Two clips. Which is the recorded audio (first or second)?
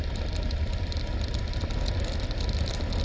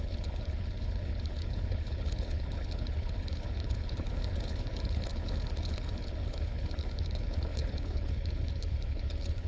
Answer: first